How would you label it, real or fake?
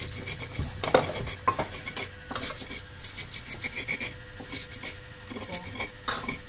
real